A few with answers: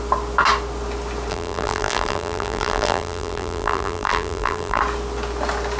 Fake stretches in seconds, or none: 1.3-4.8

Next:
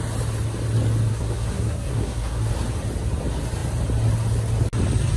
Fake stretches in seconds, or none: 1.1-2.5

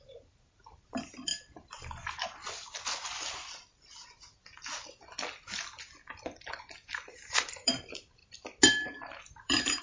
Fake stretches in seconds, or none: 0.0-1.3; 6.6-8.2; 9.3-9.8

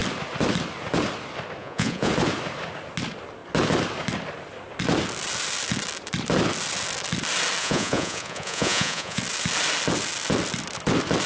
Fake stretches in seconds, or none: 1.6-2.1; 7.6-9.2